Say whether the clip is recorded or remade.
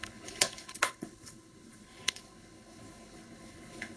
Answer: remade